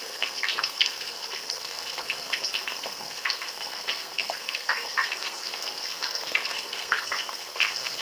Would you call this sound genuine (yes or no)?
no